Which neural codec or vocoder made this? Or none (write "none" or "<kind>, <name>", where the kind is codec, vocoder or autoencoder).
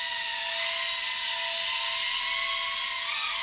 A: none